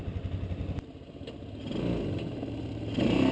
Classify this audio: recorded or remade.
recorded